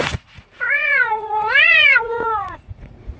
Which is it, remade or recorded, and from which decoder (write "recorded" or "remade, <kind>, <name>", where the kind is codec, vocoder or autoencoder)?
remade, vocoder, Vocos